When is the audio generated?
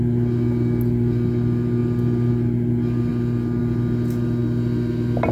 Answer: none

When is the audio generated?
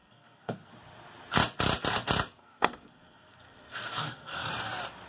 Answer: 0.0-0.7 (codec, SNAC); 2.4-4.5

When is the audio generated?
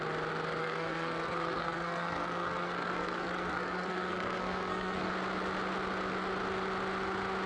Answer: 0.6-5.1 (codec, SNAC)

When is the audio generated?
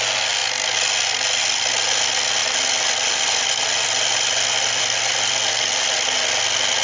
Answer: 2.4-5.5 (vocoder, BigVGAN v2)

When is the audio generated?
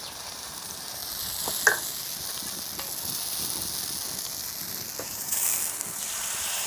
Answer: 0.0-1.0 (vocoder, BigVGAN v2); 5.0-5.4; 6.1-6.7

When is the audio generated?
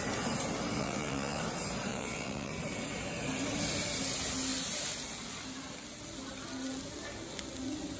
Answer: 0.8-1.4 (vocoder, WaveNeXt); 1.9-2.5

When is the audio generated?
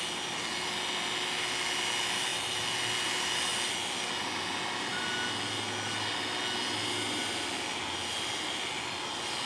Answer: none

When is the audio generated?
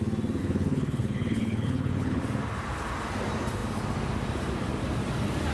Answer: 0.4-2.2 (codec, HILCodec)